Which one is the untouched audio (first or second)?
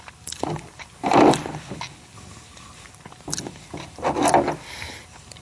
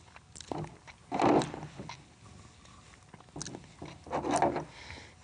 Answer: second